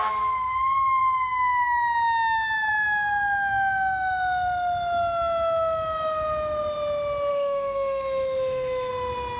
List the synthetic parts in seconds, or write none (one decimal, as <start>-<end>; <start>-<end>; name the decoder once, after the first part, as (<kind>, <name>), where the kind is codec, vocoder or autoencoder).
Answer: 7.3-8.9 (autoencoder, DAC-VAE)